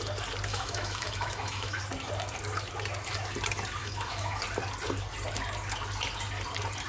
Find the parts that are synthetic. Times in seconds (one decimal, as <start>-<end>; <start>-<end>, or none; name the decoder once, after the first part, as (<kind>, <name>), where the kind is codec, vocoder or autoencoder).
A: 0.5-1.8 (autoencoder, DAC-VAE); 3.8-4.4

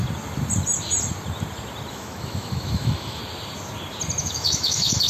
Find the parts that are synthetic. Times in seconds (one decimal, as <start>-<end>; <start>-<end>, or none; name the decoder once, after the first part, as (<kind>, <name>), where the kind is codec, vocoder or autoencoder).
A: 1.9-3.2 (autoencoder, DAC-VAE); 4.2-5.1

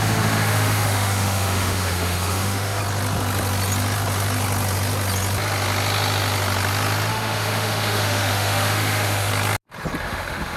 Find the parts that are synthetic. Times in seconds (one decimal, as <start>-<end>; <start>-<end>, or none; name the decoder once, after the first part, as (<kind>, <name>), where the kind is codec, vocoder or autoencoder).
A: 0.0-2.8 (autoencoder, DAC-VAE); 7.1-9.3; 10.0-10.6

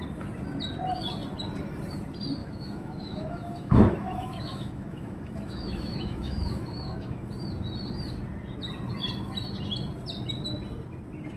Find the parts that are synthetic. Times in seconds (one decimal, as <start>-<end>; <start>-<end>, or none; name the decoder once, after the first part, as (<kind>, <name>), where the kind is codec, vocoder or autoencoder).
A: 2.4-7.3 (autoencoder, DAC-VAE)

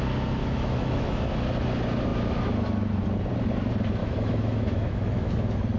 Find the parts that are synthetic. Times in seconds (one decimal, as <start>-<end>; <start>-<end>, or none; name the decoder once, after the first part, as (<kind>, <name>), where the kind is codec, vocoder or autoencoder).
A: 0.4-1.2 (autoencoder, DAC-VAE); 4.0-5.3

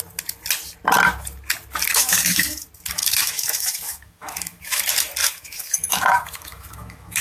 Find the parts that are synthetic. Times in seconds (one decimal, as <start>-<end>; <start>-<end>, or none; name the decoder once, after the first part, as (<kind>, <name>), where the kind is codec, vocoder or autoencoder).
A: 1.9-2.6 (autoencoder, DAC-VAE); 3.0-4.8; 5.2-7.2

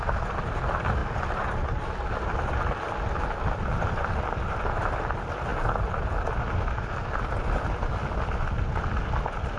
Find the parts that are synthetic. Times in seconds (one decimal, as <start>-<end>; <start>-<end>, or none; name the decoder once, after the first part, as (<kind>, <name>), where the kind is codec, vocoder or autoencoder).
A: none

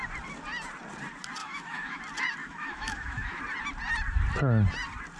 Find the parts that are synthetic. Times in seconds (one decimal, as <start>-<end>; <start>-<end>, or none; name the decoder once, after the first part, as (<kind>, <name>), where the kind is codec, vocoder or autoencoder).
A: 1.4-2.0 (autoencoder, DAC-VAE); 2.4-3.4